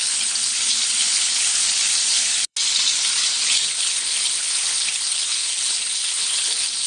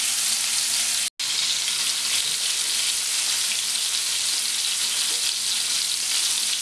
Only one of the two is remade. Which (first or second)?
first